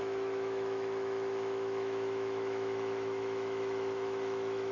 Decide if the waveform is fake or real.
fake